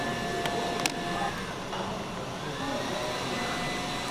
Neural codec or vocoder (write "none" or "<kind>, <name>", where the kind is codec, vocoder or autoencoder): none